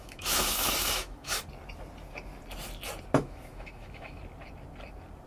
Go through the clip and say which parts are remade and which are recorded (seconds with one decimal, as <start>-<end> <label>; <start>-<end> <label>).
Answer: 0.0-1.4 remade; 1.4-3.2 recorded; 3.2-4.2 remade; 4.2-5.3 recorded